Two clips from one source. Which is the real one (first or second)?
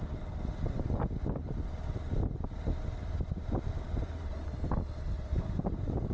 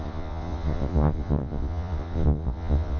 first